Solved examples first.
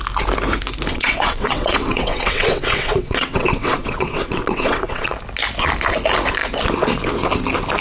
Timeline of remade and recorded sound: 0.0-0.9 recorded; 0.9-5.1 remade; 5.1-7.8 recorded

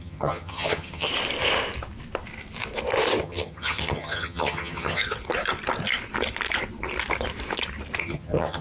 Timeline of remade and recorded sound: 0.0-1.1 remade; 1.1-3.2 recorded; 3.2-5.0 remade; 5.0-8.0 recorded; 8.0-8.6 remade